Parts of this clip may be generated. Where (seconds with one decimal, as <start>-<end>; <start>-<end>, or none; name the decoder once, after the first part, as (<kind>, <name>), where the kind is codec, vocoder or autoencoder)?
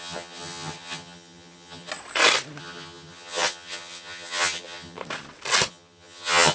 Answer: 0.0-1.9 (vocoder, HiFi-GAN); 2.6-5.0; 5.7-6.5